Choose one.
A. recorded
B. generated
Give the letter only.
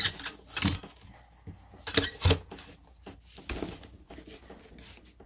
A